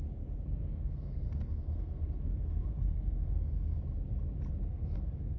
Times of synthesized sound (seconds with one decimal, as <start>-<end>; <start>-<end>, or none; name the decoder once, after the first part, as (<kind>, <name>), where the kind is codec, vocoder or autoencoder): 0.6-3.8 (codec, SNAC); 4.7-5.4